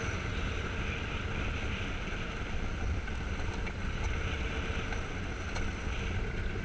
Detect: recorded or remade recorded